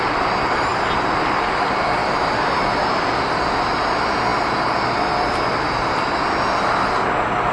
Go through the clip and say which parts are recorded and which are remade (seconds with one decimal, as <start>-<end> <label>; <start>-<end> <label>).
0.0-7.5 recorded